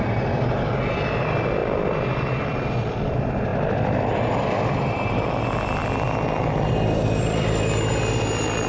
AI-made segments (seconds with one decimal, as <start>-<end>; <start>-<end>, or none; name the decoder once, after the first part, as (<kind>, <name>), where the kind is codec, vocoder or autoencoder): 0.0-3.5 (vocoder, BigVGAN v2); 4.5-8.7

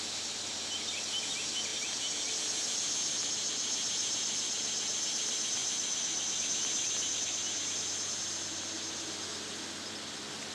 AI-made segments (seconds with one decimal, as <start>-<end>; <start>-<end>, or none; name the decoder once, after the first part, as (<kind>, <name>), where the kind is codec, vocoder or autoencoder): 5.6-6.4 (vocoder, BigVGAN v2)

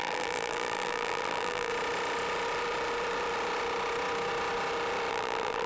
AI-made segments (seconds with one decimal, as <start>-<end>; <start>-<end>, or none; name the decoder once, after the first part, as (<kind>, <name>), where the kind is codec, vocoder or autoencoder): 0.0-1.7 (vocoder, BigVGAN v2); 5.1-5.7

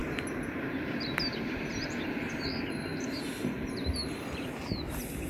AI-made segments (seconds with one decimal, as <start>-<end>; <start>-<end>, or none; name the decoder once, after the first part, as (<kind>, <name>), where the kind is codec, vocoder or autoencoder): 2.9-4.5 (vocoder, BigVGAN v2)